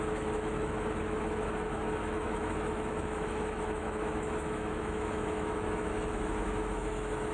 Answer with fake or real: fake